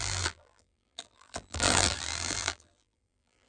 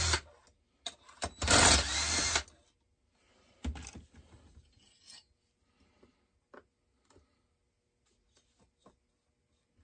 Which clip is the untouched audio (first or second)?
second